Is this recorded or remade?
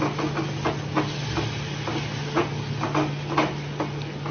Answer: recorded